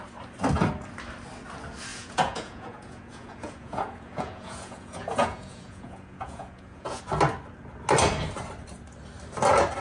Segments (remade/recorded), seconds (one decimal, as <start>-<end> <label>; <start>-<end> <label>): 0.0-1.9 recorded; 1.9-7.0 remade; 7.0-9.8 recorded